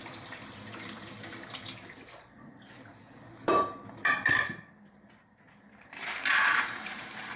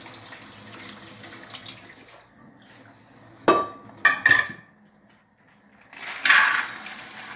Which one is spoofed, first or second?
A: first